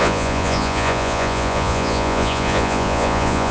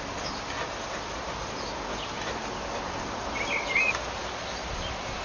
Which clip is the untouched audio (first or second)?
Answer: second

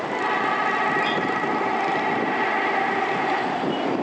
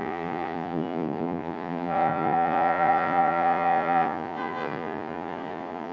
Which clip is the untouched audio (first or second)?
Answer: first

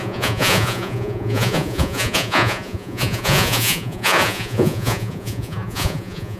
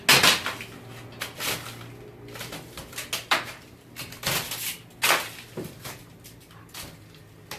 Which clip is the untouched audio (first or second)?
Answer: second